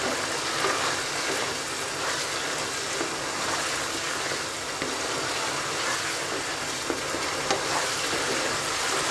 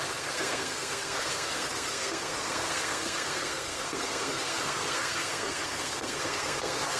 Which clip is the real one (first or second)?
first